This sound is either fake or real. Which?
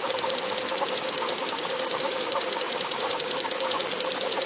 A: fake